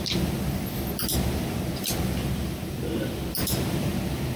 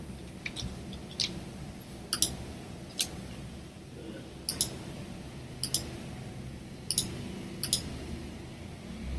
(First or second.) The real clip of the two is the second